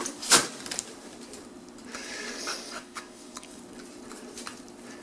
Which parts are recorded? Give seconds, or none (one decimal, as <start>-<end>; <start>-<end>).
0.0-1.9; 3.6-5.0